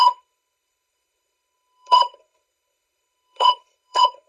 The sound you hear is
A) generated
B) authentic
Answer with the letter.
A